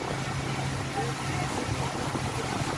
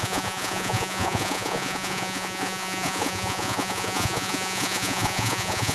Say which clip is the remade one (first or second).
second